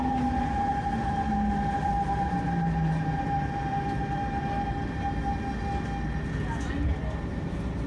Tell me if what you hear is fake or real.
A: real